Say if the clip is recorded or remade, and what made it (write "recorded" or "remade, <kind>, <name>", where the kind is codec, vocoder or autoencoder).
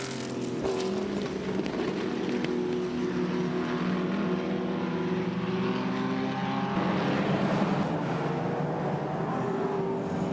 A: recorded